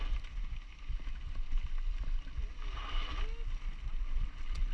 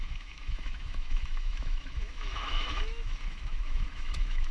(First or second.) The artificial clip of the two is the second